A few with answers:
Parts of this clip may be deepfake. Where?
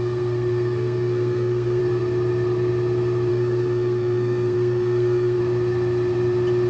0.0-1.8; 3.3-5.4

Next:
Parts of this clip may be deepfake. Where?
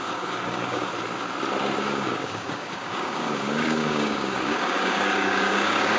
0.0-0.9; 1.8-6.0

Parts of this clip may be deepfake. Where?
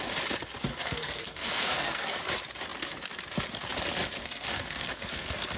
0.7-2.2; 4.2-5.6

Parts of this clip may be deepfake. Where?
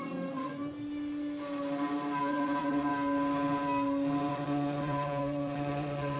0.0-0.5; 2.2-2.9; 4.3-6.2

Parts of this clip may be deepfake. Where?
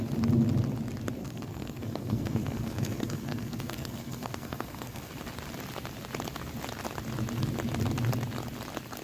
1.2-5.1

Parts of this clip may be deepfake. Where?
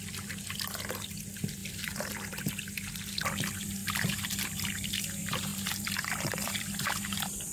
1.6-2.5; 5.5-6.7